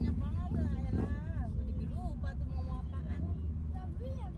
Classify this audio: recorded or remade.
recorded